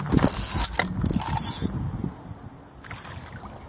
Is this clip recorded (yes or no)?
yes